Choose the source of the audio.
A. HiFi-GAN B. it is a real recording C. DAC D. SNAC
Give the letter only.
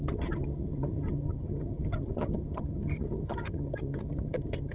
A